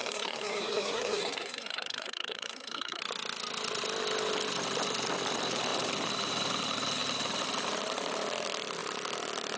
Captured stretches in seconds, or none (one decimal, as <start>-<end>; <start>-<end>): 3.0-9.6